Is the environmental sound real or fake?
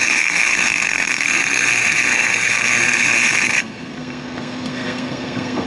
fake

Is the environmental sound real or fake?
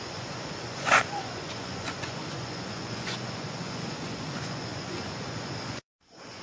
fake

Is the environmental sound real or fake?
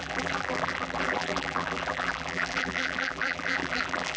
fake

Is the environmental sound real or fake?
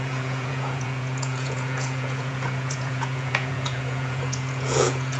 fake